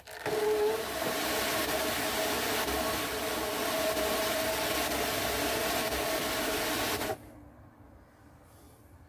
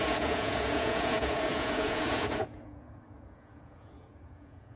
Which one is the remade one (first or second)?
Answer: second